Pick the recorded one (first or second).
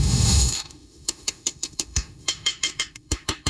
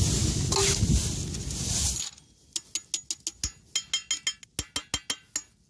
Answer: second